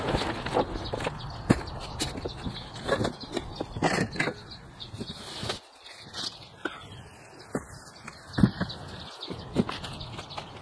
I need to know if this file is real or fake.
real